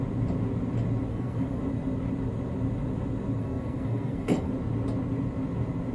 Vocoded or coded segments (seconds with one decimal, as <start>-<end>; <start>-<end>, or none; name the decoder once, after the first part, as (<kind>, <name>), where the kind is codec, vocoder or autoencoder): 1.1-1.6 (codec, SNAC); 3.4-4.5